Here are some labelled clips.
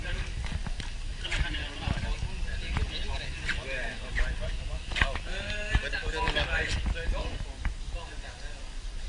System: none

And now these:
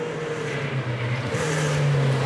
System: none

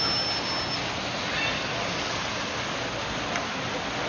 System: none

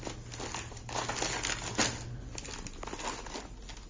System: none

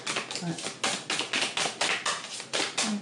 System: none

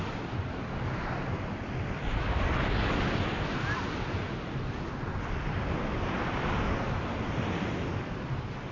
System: none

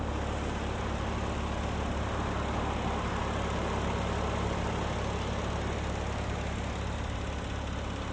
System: none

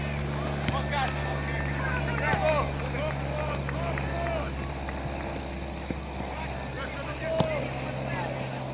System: none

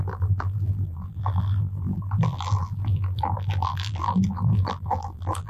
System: vocoder, BigVGAN v2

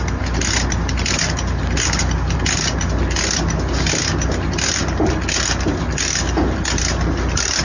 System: none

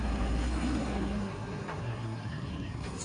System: codec, SNAC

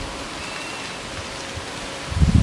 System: none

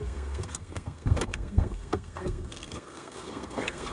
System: codec, SNAC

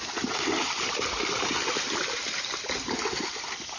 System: none